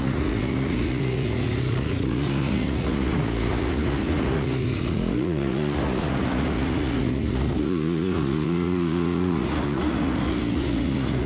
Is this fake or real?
fake